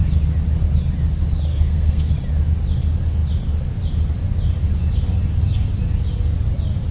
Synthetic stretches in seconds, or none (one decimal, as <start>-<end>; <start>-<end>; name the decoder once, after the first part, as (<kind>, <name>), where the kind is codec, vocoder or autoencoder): 1.5-2.1 (codec, SNAC)